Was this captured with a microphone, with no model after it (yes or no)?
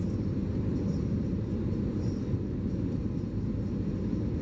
yes